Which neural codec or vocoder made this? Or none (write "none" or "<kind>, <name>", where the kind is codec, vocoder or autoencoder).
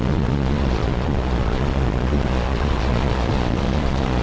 vocoder, Vocos